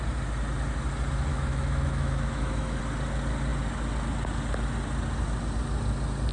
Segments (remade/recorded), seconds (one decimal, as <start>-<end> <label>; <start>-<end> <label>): 0.0-1.3 recorded; 1.3-2.8 remade; 2.8-6.3 recorded